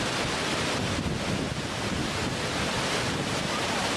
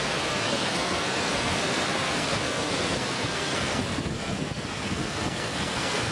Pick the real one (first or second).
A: first